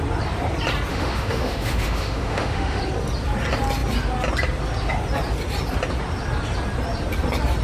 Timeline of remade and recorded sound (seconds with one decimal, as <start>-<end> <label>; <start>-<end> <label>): 0.0-0.9 recorded; 0.9-2.8 remade; 2.8-7.6 recorded